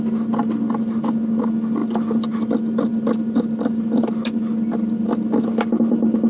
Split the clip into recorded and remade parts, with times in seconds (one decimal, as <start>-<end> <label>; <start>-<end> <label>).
0.0-6.3 recorded

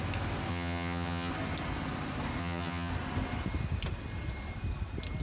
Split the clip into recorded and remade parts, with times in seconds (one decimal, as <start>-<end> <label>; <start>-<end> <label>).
0.0-0.5 recorded; 0.5-1.3 remade; 1.3-2.4 recorded; 2.4-2.9 remade; 2.9-5.2 recorded

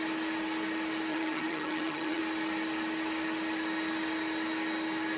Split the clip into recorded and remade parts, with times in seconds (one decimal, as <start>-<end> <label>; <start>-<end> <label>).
0.0-1.1 recorded; 1.1-2.2 remade; 2.2-5.2 recorded

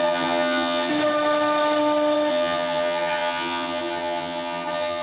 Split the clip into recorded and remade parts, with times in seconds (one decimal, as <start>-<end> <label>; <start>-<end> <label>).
0.0-0.9 remade; 0.9-2.3 recorded; 2.3-5.0 remade

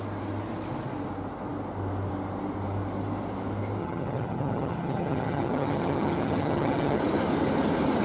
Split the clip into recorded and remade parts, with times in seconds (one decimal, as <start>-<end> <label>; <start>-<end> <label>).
0.0-3.8 recorded; 3.8-7.0 remade; 7.0-8.0 recorded